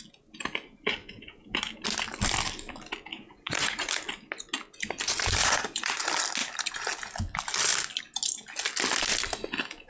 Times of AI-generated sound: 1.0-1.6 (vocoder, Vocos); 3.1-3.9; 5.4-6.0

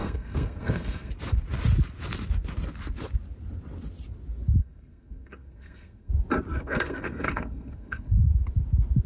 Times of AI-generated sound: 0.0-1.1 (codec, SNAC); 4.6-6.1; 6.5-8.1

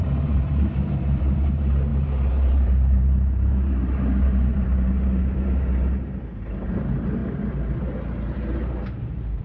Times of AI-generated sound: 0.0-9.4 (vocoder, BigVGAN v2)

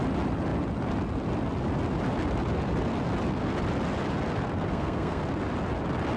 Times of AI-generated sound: 4.7-5.2 (codec, SNAC)

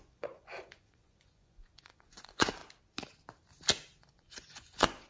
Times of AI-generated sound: 0.0-2.6 (vocoder, Vocos); 4.0-5.1

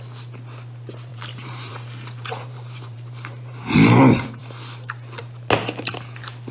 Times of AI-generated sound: 1.1-4.0 (vocoder, BigVGAN v2)